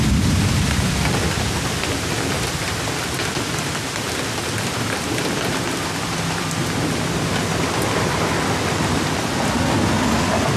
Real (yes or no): yes